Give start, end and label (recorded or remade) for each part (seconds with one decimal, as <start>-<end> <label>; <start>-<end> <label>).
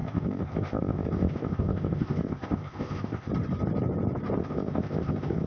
0.0-3.3 remade; 3.3-4.4 recorded; 4.4-5.5 remade